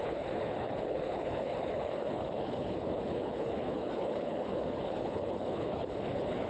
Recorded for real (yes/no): no